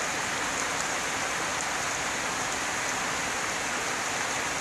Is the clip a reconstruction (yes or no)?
no